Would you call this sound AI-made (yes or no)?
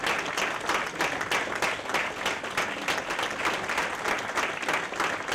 no